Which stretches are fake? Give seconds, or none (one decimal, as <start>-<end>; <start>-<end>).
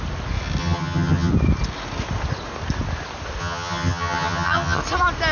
0.6-1.3; 3.4-4.8